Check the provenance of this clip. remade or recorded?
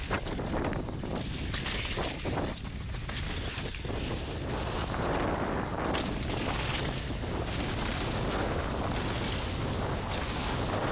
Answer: recorded